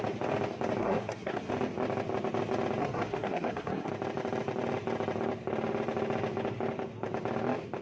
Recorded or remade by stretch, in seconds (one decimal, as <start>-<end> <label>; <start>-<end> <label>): 0.0-0.8 recorded; 0.8-1.5 remade; 1.5-2.8 recorded; 2.8-3.9 remade; 3.9-7.8 recorded